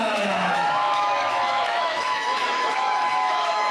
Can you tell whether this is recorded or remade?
remade